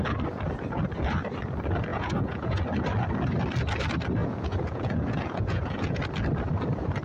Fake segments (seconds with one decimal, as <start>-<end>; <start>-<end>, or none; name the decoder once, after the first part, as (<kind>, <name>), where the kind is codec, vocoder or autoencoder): 1.9-2.6 (vocoder, Vocos); 4.2-6.0